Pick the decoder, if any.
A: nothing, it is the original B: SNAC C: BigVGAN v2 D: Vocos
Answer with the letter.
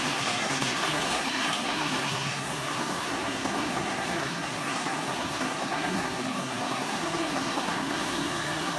B